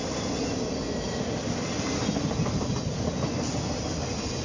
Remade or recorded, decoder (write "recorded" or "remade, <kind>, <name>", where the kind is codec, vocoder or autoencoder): recorded